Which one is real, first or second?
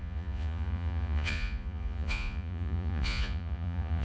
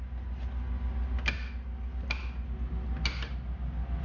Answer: second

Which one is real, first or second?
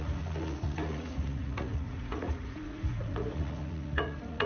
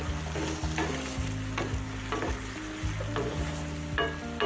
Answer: second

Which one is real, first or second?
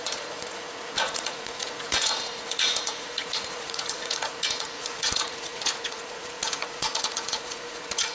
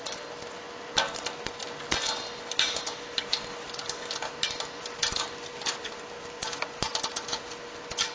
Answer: second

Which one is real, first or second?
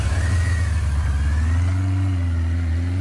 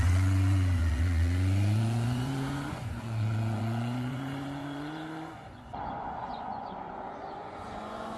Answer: first